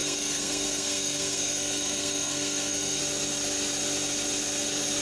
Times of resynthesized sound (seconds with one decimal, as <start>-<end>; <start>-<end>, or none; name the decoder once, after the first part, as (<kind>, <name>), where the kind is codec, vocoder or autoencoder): 0.0-3.0 (codec, SNAC)